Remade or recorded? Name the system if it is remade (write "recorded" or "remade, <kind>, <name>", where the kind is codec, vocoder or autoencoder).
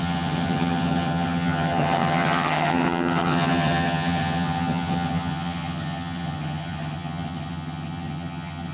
remade, vocoder, HiFi-GAN